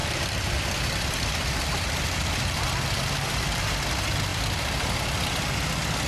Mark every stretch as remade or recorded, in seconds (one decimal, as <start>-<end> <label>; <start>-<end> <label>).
0.0-3.7 remade; 3.7-4.3 recorded; 4.3-4.9 remade; 4.9-6.1 recorded